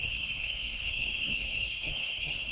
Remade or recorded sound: remade